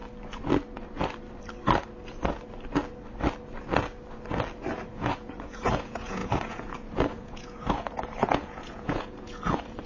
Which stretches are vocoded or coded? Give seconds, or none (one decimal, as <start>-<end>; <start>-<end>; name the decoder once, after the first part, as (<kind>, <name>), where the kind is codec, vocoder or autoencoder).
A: 4.9-9.9 (vocoder, Vocos)